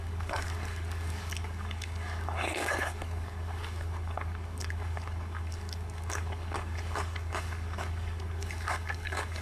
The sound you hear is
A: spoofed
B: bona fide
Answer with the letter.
A